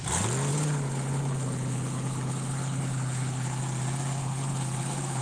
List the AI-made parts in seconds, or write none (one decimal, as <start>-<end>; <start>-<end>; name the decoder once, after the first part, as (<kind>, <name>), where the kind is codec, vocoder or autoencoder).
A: 0.5-3.6 (codec, HILCodec); 4.2-5.2